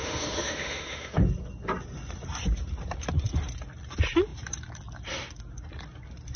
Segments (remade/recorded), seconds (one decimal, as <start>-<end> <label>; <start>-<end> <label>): 0.0-1.2 remade; 1.2-6.4 recorded